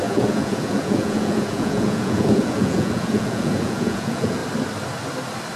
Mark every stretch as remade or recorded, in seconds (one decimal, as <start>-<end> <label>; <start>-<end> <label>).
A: 0.0-4.4 remade; 4.4-5.6 recorded